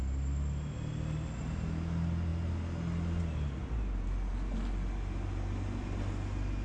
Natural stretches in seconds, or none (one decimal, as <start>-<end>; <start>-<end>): 0.0-6.6